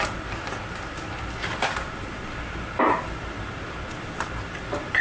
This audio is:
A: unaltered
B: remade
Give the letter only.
A